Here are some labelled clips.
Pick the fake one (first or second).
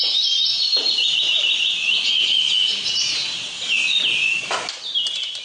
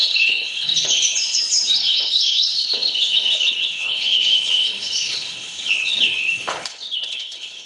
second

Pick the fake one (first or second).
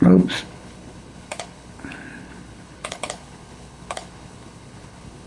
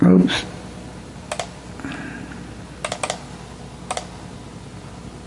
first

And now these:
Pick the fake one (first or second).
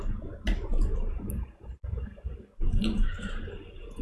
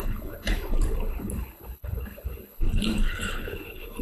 second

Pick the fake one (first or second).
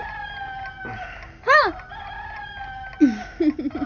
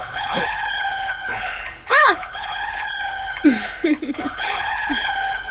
second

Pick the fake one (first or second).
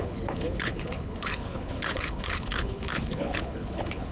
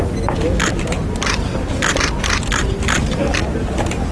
first